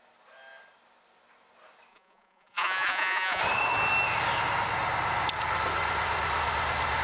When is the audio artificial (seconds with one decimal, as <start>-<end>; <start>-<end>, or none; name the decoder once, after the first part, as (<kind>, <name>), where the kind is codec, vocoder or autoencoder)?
1.9-3.4 (vocoder, Vocos)